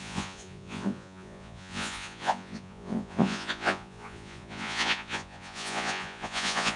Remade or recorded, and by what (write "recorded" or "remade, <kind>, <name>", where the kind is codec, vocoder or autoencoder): remade, vocoder, Vocos